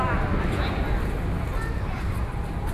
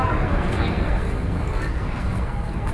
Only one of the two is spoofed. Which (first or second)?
second